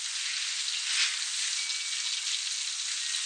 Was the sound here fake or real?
real